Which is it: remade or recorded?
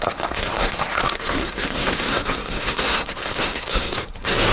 remade